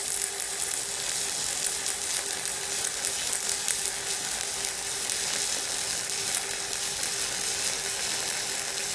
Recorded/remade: recorded